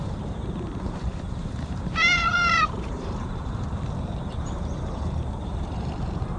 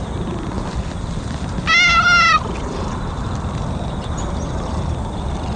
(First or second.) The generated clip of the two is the first